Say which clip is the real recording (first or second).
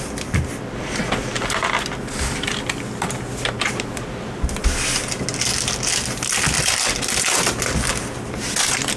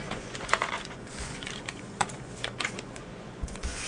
first